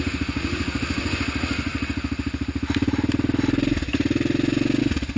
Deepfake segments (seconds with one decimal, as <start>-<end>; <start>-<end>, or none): none